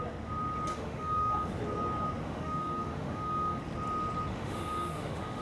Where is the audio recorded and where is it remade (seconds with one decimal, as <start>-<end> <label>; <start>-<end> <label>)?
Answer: 0.0-0.7 recorded; 0.7-1.5 remade; 1.5-2.2 recorded; 2.2-3.6 remade; 3.6-4.3 recorded; 4.3-5.4 remade